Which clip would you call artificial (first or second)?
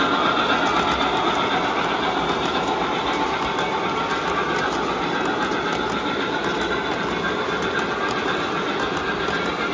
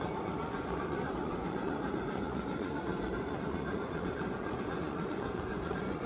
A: second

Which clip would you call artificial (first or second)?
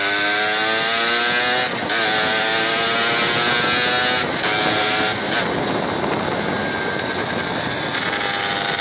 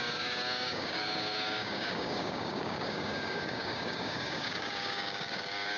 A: second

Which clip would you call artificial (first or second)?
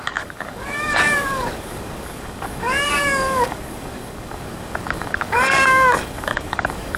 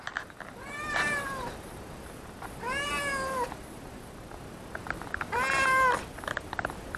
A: first